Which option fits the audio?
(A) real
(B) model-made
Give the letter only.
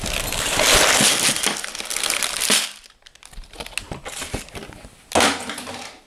A